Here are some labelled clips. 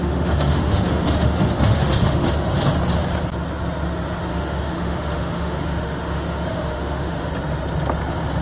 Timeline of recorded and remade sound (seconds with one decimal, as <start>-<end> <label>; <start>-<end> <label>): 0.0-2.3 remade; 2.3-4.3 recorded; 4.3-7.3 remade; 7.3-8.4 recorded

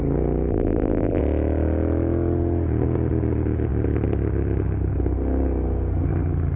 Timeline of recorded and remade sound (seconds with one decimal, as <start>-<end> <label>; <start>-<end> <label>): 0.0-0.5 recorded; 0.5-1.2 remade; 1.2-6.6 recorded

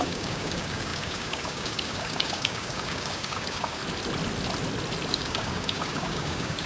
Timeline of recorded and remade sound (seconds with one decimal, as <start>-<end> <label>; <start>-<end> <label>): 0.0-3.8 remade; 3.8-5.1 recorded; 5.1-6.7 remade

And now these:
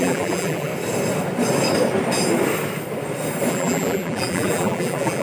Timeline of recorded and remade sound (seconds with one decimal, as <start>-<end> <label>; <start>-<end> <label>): 0.0-0.7 remade; 0.7-3.5 recorded; 3.5-5.2 remade